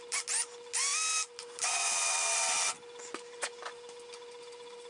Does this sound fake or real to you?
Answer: real